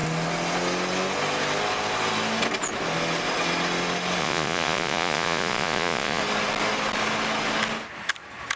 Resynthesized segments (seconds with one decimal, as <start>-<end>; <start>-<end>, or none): 4.2-6.2